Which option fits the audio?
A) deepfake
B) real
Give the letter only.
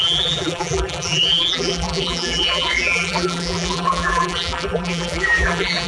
A